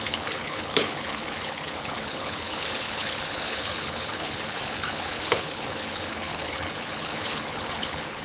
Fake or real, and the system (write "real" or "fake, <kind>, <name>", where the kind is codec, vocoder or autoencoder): fake, codec, HILCodec